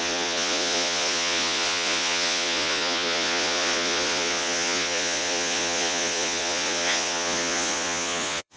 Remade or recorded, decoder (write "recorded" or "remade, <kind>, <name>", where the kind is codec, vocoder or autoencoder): remade, vocoder, Vocos